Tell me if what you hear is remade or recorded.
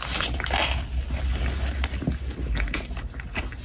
recorded